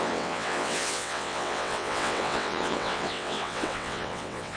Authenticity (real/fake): fake